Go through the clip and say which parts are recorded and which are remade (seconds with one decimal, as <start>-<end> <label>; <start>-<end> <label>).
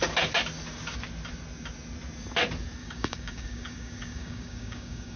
0.0-2.8 recorded; 2.8-5.2 remade